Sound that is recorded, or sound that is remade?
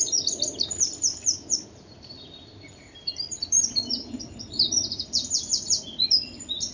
remade